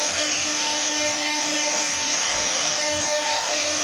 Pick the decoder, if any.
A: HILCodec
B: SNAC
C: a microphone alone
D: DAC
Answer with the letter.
D